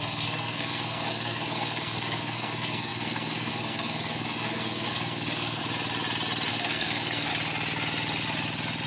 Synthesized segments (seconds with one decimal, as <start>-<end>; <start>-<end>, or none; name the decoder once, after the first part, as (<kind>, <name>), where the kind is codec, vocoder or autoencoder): 0.0-5.6 (codec, SNAC); 6.5-7.3